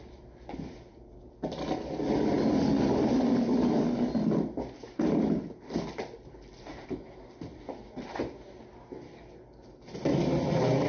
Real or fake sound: real